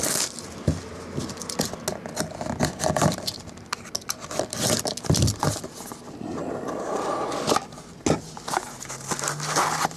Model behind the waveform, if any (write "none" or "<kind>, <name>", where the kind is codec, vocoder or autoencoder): none